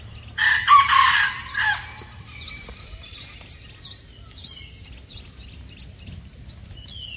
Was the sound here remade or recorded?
recorded